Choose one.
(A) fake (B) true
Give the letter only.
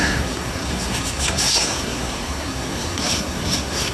A